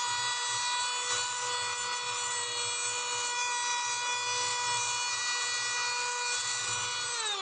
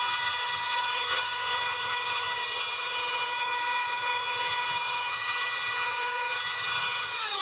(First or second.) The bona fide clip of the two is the first